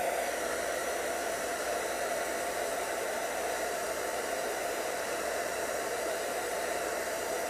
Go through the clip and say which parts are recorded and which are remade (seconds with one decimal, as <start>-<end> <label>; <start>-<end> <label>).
0.0-0.8 recorded; 0.8-1.5 remade; 1.5-2.7 recorded; 2.7-7.5 remade